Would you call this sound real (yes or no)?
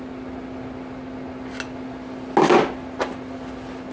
yes